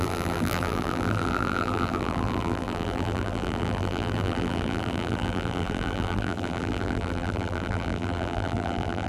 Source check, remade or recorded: remade